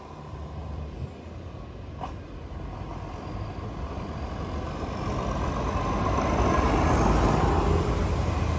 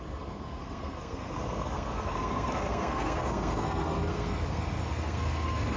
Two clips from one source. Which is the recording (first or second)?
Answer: first